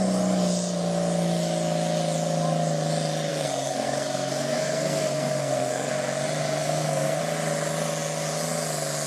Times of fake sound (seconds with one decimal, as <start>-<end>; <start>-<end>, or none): 3.3-5.9; 6.6-7.2